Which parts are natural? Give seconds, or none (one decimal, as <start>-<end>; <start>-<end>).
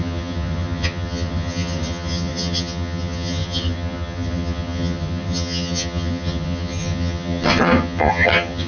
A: none